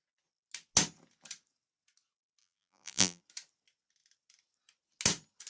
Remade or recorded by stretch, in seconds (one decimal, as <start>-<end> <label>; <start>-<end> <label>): 0.0-2.4 recorded; 2.4-3.2 remade; 3.2-5.5 recorded